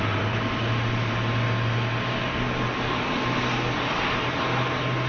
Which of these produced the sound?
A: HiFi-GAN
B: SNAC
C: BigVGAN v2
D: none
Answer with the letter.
D